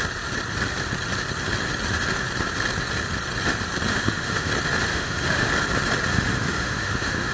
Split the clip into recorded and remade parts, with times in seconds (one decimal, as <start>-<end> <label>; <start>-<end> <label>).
0.0-3.9 recorded; 3.9-4.5 remade; 4.5-4.9 recorded; 4.9-5.5 remade; 5.5-6.1 recorded; 6.1-7.3 remade